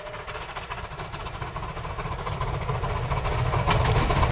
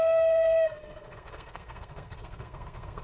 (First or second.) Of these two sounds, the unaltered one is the first